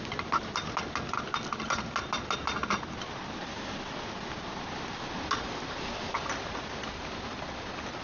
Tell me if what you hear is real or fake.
real